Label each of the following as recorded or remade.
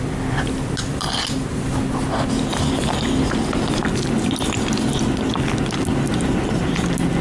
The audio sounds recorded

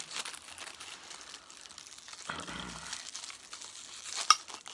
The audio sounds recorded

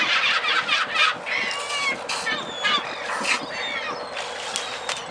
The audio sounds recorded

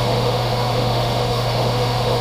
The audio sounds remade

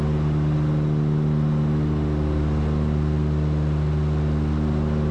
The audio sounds recorded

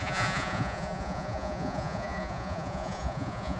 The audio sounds remade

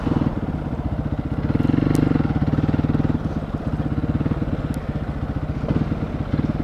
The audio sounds recorded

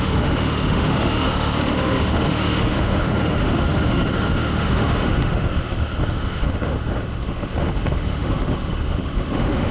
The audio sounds remade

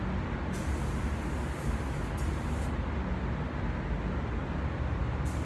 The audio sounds recorded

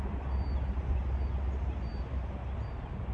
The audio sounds recorded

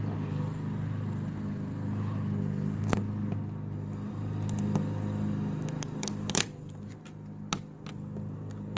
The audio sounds remade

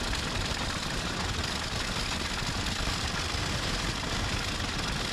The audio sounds recorded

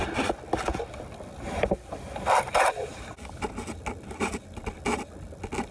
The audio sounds recorded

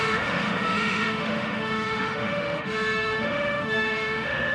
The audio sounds remade